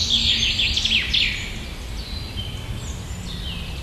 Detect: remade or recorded recorded